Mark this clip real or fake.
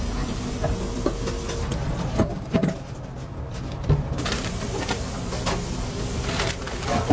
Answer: real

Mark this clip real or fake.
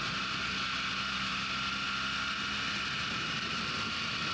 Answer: real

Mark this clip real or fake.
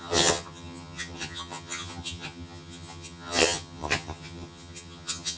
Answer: fake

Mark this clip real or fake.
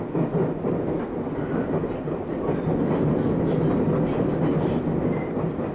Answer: real